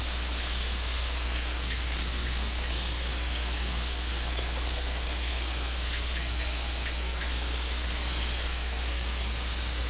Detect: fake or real fake